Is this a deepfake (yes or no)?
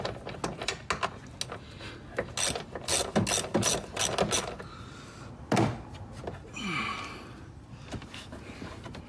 no